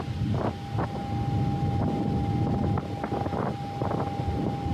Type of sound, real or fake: real